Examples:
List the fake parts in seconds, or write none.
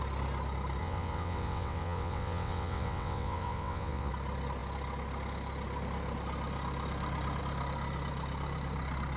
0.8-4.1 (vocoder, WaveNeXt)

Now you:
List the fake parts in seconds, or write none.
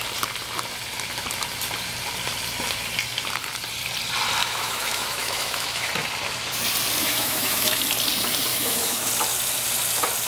4.4-5.9 (autoencoder, DAC-VAE); 7.0-7.8; 8.5-9.1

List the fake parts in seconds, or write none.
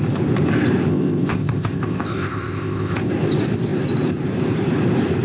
0.9-3.1 (codec, ZipCodec)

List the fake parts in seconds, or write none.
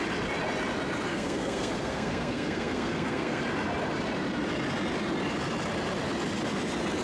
1.1-3.4 (codec, SNAC)